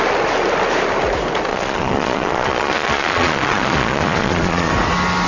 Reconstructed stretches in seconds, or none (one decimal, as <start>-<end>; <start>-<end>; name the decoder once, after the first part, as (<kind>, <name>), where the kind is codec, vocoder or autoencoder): 1.5-4.7 (vocoder, Vocos)